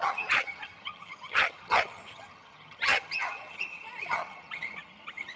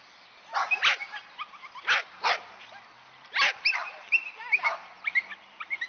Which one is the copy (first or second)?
first